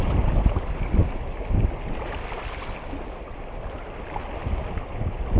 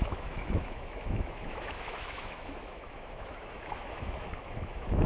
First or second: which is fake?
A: second